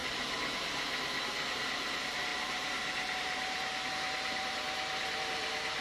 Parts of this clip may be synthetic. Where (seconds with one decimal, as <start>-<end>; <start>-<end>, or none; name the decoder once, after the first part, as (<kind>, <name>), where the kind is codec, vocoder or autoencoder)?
1.2-5.8 (vocoder, BigVGAN v2)